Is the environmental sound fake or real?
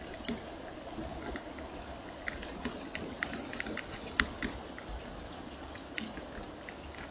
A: real